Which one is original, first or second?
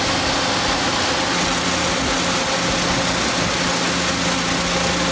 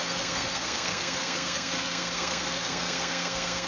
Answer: first